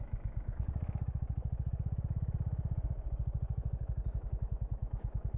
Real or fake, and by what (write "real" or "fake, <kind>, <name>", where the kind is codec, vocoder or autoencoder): fake, autoencoder, DAC-VAE